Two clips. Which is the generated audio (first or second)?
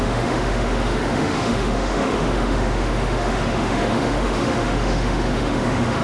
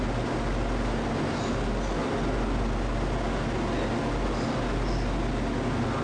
first